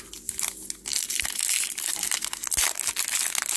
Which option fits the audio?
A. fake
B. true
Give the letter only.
B